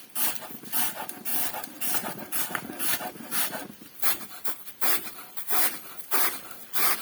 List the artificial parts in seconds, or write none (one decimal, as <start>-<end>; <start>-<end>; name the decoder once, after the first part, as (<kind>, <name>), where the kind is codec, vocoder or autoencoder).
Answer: 1.3-2.4 (vocoder, BigVGAN v2); 3.8-6.1